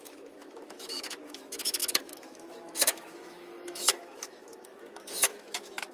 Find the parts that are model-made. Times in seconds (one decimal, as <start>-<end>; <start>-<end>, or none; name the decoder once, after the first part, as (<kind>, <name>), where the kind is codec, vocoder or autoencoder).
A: 0.0-5.9 (autoencoder, DAC-VAE)